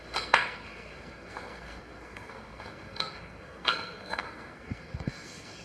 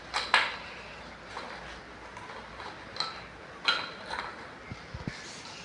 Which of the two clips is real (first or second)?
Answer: second